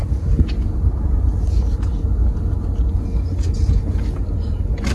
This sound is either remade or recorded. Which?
recorded